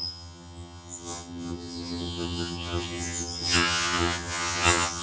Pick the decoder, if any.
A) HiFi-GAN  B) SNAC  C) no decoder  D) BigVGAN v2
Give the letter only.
A